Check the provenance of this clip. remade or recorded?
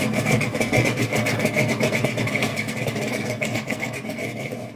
remade